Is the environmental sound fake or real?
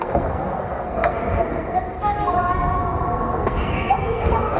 fake